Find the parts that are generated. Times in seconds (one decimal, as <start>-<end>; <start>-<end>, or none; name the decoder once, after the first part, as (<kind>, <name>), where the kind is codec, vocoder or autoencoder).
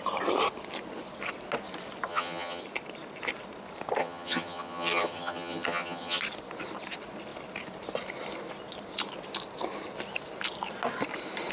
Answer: 2.1-2.6 (vocoder, HiFi-GAN); 4.0-6.2